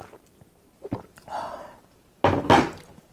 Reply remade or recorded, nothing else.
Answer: recorded